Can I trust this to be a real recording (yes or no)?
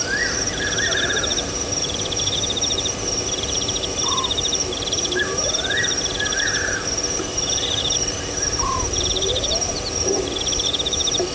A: no